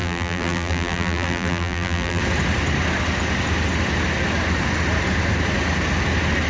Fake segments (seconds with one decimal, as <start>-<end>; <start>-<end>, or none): 0.0-2.2